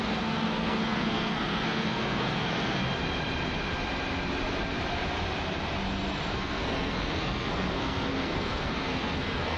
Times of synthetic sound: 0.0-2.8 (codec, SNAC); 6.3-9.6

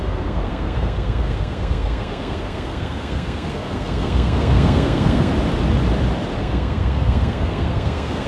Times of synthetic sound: 0.0-5.3 (codec, SNAC); 6.4-8.3

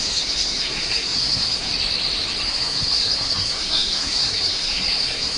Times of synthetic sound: 0.0-1.7 (codec, SNAC); 2.5-5.4

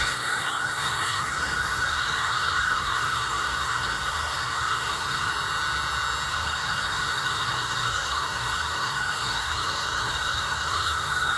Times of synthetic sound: 0.0-5.3 (codec, SNAC); 6.3-11.4